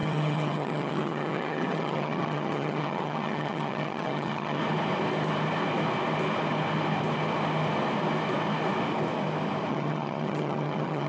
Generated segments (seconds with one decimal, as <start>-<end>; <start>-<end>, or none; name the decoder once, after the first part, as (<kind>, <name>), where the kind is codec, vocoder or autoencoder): 0.0-4.6 (vocoder, HiFi-GAN); 9.7-11.1